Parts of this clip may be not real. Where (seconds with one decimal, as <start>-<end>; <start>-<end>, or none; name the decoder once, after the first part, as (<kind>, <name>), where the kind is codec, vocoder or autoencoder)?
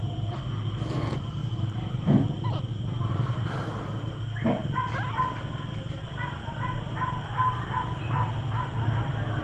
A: 1.4-4.1 (vocoder, BigVGAN v2); 6.4-7.7